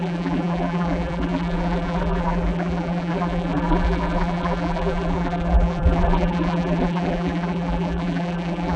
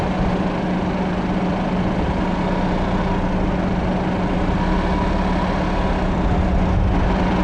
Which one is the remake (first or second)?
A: first